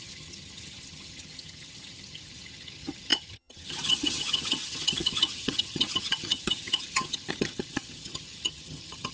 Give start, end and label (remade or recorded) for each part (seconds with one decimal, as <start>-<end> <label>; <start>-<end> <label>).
0.0-9.1 remade